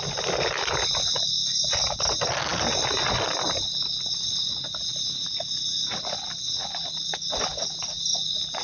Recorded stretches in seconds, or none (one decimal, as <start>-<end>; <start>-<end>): 0.0-8.6